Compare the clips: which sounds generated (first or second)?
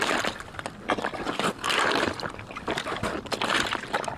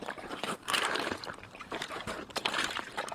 second